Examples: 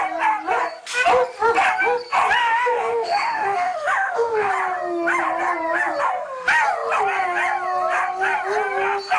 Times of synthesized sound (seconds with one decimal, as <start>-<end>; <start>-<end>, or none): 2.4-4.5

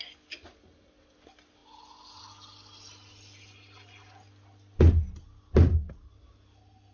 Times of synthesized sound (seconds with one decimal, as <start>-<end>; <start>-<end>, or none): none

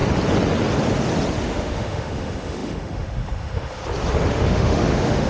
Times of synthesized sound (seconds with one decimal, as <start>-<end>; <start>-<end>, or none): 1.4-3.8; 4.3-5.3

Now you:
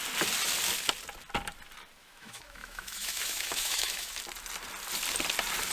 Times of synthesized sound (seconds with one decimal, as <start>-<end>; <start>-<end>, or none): 2.0-4.2